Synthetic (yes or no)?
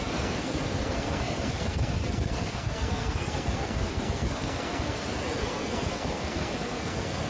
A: yes